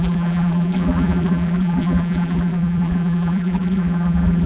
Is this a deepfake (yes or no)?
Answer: yes